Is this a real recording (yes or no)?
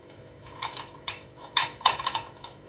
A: no